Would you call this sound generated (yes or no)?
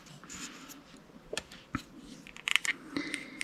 yes